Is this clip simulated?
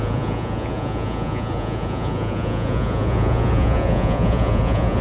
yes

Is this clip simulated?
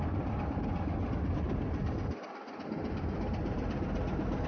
yes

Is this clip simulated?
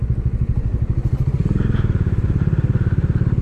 no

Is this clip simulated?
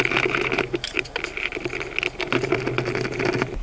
no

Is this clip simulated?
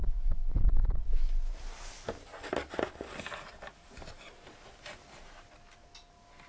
no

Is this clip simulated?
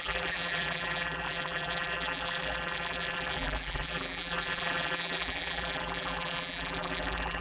yes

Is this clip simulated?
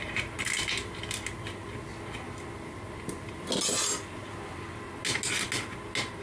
no